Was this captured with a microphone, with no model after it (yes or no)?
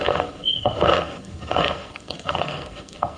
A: no